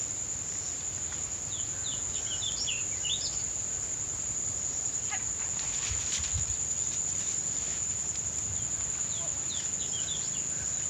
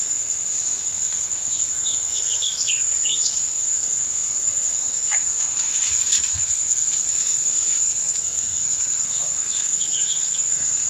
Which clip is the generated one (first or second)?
second